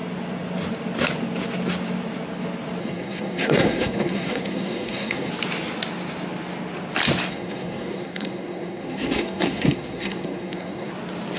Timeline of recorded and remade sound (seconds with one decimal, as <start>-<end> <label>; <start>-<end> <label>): 0.0-2.8 recorded; 2.8-5.3 remade; 5.3-7.3 recorded; 7.3-10.9 remade; 10.9-11.4 recorded